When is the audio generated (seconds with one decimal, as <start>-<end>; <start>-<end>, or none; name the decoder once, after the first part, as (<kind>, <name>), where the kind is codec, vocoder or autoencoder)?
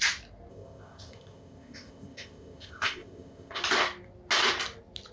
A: 0.5-3.6 (codec, ZipCodec)